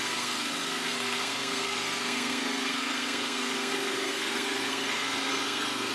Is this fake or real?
fake